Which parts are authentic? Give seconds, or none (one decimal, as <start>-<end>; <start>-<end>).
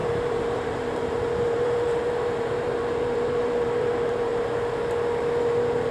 4.3-5.4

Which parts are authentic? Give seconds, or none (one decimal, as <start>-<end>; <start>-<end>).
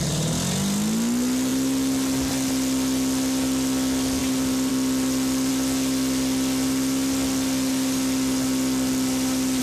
0.0-4.2; 4.7-9.6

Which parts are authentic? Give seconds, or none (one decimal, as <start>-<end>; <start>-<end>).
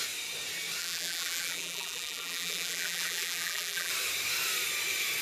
0.0-0.8; 3.9-5.2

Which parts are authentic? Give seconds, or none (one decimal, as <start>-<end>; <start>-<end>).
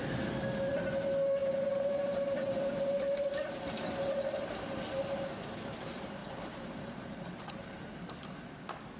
0.0-1.4; 3.6-6.2; 7.7-9.0